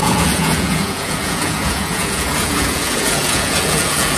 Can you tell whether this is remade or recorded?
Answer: remade